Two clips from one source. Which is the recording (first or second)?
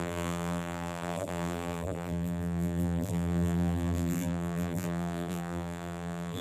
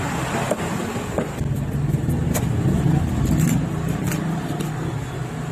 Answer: second